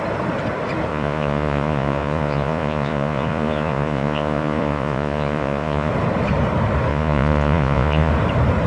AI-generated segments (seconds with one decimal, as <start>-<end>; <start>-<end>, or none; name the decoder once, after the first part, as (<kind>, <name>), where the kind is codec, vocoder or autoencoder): 0.9-5.9 (vocoder, Vocos); 6.9-8.1